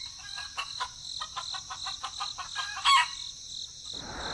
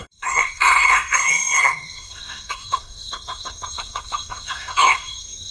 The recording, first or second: first